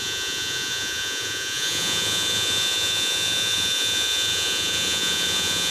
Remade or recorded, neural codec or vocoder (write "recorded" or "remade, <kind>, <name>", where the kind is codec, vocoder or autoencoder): remade, vocoder, Vocos